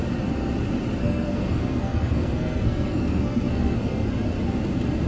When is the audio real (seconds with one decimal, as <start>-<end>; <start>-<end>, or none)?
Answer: 0.0-1.0; 4.1-5.1